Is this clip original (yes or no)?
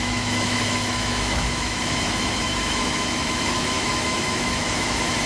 no